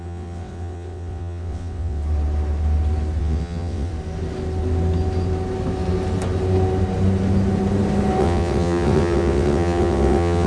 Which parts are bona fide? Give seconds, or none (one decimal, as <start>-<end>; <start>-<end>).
2.0-3.2; 3.9-8.2